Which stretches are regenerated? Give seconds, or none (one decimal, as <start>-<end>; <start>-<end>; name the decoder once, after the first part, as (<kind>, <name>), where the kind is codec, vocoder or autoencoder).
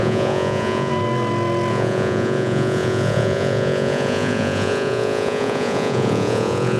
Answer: 0.0-0.9 (vocoder, Vocos); 1.7-6.8